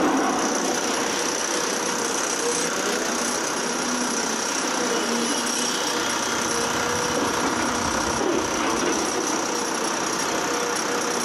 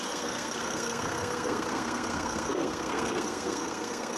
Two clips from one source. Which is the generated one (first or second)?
second